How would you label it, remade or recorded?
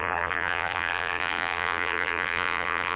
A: remade